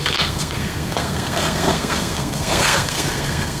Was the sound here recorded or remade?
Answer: remade